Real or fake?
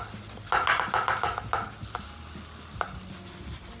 real